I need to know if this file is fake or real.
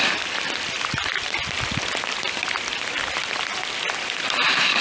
real